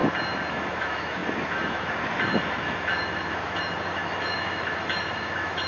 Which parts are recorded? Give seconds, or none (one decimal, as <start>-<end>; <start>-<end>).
0.0-0.5